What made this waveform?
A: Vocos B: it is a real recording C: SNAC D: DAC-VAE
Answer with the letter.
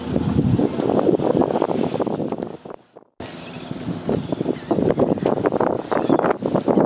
B